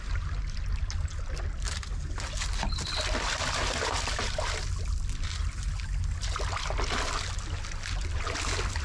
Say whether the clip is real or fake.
real